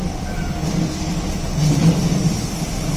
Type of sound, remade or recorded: recorded